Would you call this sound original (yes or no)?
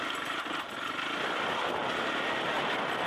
yes